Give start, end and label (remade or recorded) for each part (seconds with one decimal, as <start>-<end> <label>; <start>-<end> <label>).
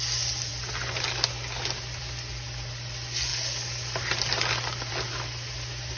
0.0-6.0 recorded